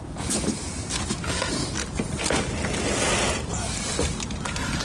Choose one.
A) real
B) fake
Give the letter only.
A